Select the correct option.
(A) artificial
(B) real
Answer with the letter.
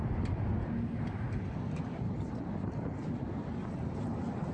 B